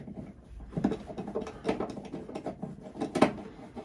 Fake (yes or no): no